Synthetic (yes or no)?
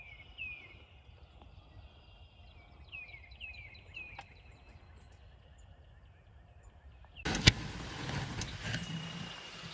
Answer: no